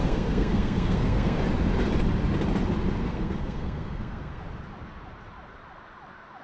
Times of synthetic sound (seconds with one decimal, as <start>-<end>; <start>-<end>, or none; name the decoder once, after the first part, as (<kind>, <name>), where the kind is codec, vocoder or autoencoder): 0.0-1.4 (codec, SNAC); 3.0-4.4